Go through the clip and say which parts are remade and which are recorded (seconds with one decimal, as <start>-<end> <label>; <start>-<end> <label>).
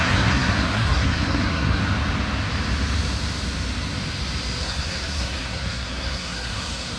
0.0-1.8 remade; 1.8-4.6 recorded; 4.6-7.0 remade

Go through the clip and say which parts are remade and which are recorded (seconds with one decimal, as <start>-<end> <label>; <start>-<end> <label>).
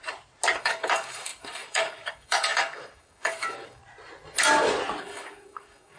0.0-0.6 recorded; 0.6-3.8 remade; 3.8-5.0 recorded; 5.0-6.0 remade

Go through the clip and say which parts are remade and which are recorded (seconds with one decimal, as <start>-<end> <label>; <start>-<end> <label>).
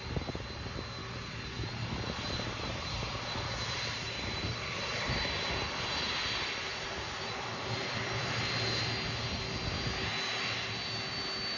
0.0-1.0 recorded; 1.0-5.3 remade; 5.3-6.7 recorded; 6.7-8.1 remade; 8.1-11.6 recorded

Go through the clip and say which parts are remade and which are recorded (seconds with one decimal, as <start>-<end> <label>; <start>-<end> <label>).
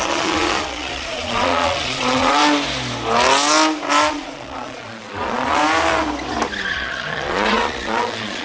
0.0-2.4 remade; 2.4-4.1 recorded; 4.1-5.6 remade; 5.6-6.7 recorded; 6.7-8.4 remade